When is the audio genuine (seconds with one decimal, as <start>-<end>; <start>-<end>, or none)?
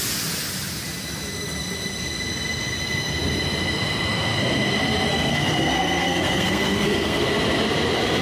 0.0-5.1; 7.3-8.2